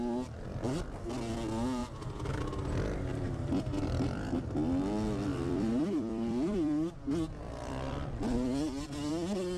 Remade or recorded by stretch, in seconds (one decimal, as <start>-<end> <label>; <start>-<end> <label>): 0.0-1.8 recorded; 1.8-2.3 remade; 2.3-3.1 recorded; 3.1-4.4 remade; 4.4-5.3 recorded; 5.3-9.1 remade; 9.1-9.6 recorded